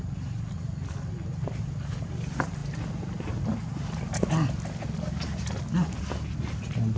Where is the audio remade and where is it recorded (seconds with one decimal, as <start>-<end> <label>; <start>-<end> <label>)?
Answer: 0.0-7.0 recorded